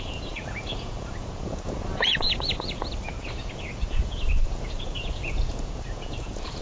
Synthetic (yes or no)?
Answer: yes